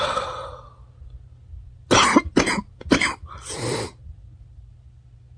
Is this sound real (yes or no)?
yes